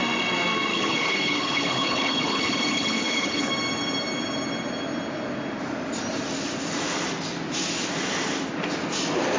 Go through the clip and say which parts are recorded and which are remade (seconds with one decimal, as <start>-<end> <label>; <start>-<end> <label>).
0.0-0.7 recorded; 0.7-3.5 remade; 3.5-9.4 recorded